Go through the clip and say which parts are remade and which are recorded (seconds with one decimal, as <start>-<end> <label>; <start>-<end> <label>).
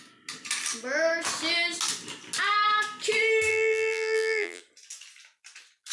0.0-3.5 recorded; 3.5-4.6 remade; 4.6-5.9 recorded